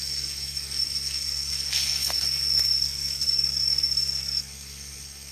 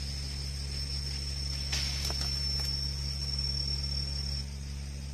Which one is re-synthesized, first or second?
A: first